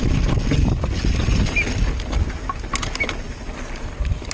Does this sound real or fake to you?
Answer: real